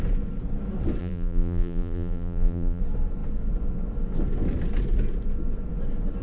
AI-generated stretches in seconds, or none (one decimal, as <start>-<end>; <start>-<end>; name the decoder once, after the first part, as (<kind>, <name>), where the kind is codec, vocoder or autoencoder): 1.0-2.8 (vocoder, BigVGAN v2)